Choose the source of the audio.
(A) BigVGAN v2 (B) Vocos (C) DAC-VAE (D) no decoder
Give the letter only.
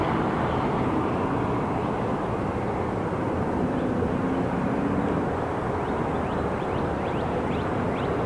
D